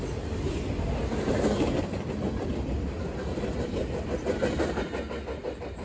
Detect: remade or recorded recorded